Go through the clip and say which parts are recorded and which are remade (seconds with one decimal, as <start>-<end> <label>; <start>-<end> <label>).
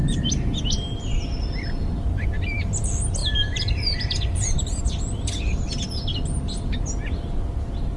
0.0-3.2 recorded; 3.2-4.8 remade; 4.8-8.0 recorded